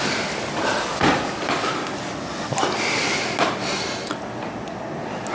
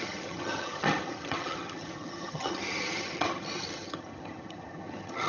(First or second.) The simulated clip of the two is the second